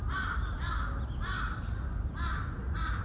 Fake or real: real